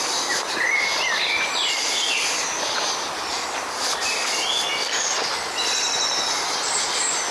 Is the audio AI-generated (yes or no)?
no